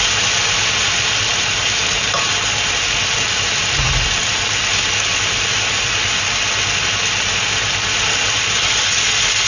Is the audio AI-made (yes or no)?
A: no